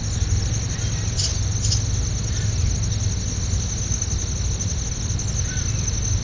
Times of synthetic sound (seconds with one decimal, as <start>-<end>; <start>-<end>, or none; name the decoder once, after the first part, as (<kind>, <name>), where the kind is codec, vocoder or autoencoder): none